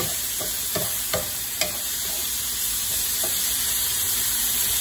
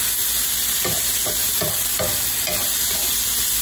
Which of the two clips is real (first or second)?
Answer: second